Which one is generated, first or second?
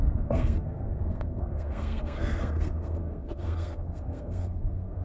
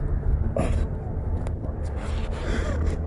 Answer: first